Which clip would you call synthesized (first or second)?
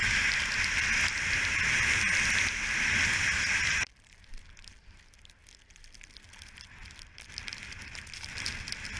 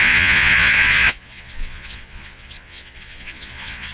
second